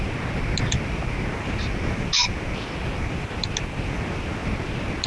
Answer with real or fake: real